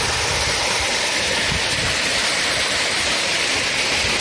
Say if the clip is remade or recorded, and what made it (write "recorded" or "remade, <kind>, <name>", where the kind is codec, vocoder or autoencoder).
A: recorded